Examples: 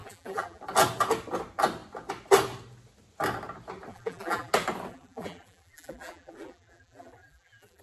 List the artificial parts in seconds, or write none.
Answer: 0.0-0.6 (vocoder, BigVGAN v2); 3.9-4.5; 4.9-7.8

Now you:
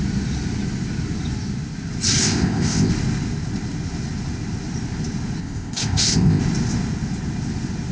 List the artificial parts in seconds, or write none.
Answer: 2.2-2.9 (codec, ZipCodec); 5.4-6.4